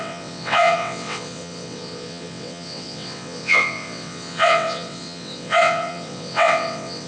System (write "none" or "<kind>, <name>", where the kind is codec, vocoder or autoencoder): vocoder, WaveNeXt